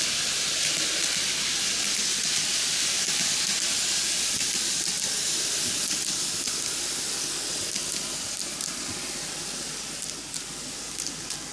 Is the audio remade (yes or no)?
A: no